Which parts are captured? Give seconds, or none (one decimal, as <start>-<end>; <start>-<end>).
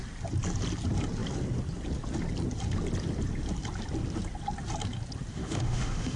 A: 0.0-5.3